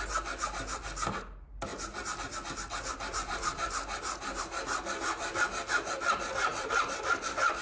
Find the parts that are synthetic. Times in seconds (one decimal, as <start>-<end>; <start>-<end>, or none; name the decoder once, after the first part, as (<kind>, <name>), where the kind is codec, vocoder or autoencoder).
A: none